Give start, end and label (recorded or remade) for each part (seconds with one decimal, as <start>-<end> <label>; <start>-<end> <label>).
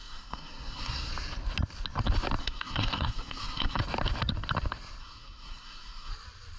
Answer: 0.0-1.1 remade; 1.1-2.4 recorded; 2.4-3.8 remade; 3.8-5.0 recorded; 5.0-6.1 remade; 6.1-6.6 recorded